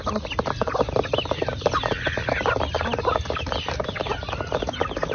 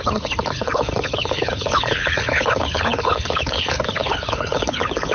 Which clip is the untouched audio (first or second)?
first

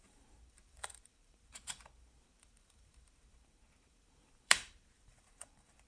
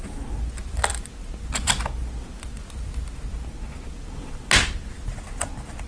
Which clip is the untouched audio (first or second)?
second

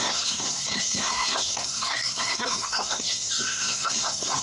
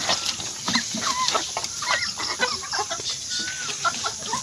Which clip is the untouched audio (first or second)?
second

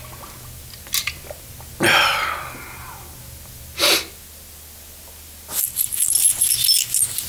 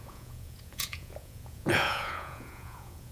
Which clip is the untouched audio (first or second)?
first